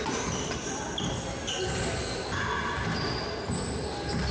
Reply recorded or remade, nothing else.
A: recorded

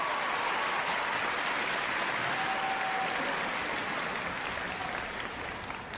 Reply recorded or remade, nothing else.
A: recorded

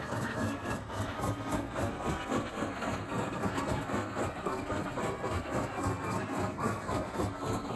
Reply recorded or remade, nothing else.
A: remade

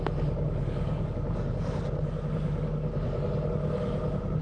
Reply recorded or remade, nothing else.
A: remade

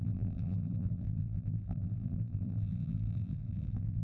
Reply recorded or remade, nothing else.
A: remade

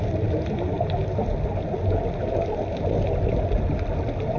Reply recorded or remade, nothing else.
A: recorded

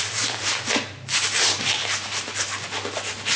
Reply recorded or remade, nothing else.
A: recorded